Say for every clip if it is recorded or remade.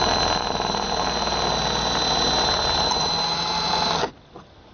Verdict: recorded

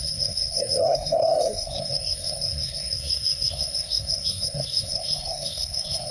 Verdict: remade